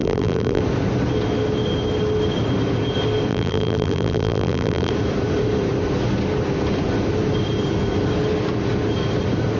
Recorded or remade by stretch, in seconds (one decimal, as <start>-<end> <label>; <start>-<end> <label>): 0.0-0.6 remade; 0.6-3.3 recorded; 3.3-4.9 remade; 4.9-9.6 recorded